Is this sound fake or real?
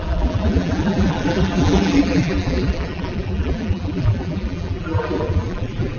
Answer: fake